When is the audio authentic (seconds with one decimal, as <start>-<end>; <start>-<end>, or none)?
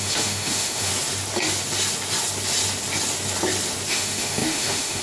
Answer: 0.9-3.9